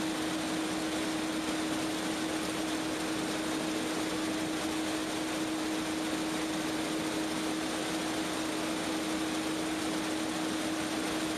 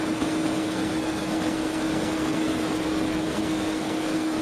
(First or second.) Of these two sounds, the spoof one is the second